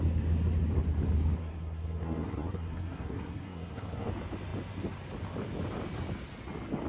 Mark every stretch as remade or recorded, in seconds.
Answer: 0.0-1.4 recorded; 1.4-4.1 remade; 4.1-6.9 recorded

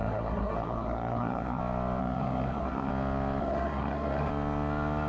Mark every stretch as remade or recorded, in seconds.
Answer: 0.0-1.6 remade; 1.6-2.0 recorded; 2.0-2.9 remade; 2.9-3.4 recorded; 3.4-4.3 remade; 4.3-5.1 recorded